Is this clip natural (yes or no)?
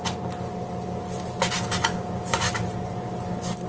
yes